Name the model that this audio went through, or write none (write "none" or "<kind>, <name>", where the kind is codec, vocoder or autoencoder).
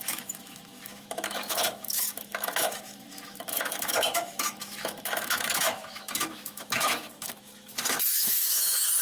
autoencoder, DAC-VAE